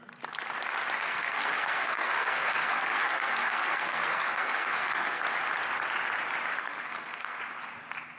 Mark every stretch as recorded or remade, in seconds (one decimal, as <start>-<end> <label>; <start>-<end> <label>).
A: 0.0-1.0 recorded; 1.0-5.2 remade; 5.2-6.6 recorded; 6.6-7.4 remade; 7.4-8.2 recorded